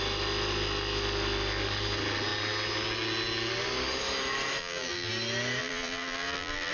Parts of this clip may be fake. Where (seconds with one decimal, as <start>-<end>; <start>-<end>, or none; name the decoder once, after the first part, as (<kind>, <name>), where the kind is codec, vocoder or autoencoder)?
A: 4.6-5.1 (vocoder, BigVGAN v2); 5.6-6.7